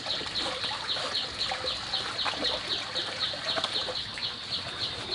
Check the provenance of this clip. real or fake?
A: real